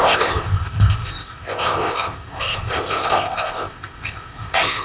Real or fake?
fake